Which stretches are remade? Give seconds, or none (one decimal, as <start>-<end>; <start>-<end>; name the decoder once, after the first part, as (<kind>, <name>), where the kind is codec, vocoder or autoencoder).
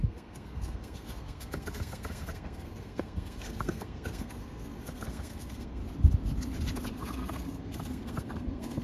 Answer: 0.0-5.8 (codec, SNAC); 6.9-8.8